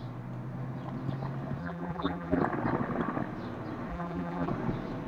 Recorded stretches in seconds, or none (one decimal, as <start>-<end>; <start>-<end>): 0.0-1.6; 2.4-3.9; 4.5-5.1